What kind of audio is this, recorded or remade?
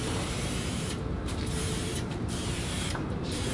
remade